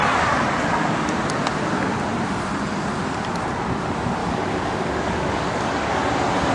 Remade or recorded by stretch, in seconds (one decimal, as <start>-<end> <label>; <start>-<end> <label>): 0.0-4.2 recorded; 4.2-6.0 remade; 6.0-6.5 recorded